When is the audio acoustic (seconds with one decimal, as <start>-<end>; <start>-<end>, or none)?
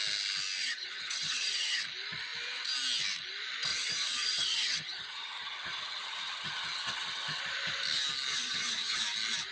0.0-0.6; 1.8-3.7; 7.4-8.3; 9.0-9.5